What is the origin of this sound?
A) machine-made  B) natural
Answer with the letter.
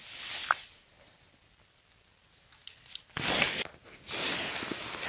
B